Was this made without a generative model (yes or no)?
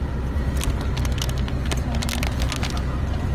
yes